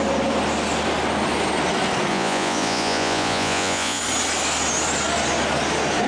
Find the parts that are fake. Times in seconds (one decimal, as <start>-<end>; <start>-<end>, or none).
2.1-4.0